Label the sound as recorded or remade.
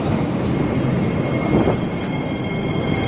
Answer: recorded